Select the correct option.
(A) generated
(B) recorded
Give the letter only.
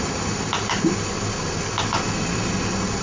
B